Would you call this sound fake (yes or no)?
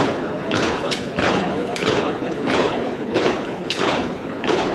yes